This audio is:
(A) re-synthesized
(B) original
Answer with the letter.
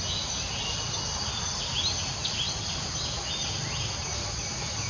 B